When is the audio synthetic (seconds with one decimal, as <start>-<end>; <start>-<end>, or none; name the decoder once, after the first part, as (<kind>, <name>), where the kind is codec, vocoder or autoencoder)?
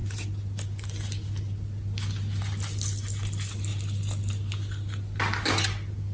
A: none